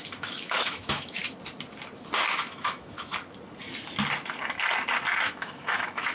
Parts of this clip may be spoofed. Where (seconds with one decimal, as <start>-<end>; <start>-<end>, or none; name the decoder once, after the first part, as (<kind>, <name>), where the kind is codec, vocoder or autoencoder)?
0.0-1.2 (autoencoder, DAC-VAE); 2.3-3.1; 5.3-6.1